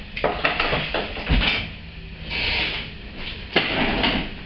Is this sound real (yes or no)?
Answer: yes